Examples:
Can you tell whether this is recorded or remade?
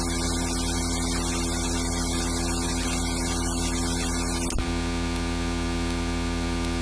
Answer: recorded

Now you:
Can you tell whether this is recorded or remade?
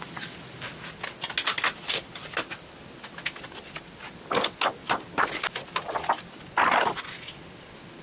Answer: recorded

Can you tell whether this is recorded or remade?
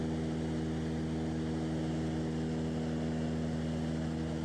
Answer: recorded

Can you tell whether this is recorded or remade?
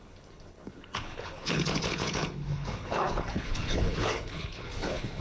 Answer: remade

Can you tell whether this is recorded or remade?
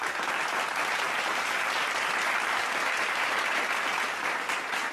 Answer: recorded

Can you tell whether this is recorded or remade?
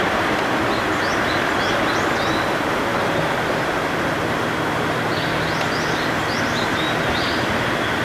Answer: recorded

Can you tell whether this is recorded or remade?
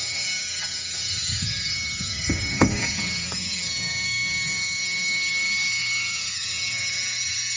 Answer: remade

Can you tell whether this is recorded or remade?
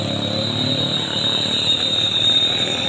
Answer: remade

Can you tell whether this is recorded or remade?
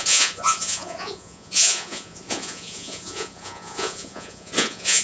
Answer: remade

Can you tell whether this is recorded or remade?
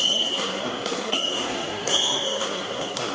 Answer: remade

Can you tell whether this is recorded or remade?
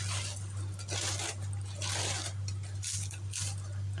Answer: recorded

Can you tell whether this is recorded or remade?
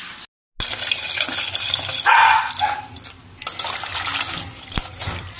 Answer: recorded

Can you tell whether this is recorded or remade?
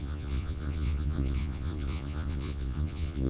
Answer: remade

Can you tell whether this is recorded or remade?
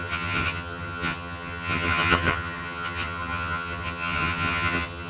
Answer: remade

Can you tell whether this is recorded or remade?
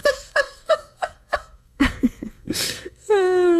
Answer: remade